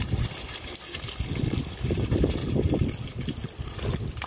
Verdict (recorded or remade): recorded